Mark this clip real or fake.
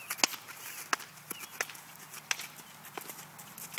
real